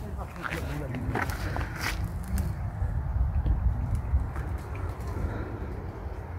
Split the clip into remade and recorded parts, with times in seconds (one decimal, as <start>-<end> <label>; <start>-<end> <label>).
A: 0.0-6.4 recorded